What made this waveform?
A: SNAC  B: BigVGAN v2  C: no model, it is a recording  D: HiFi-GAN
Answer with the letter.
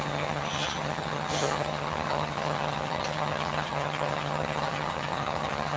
D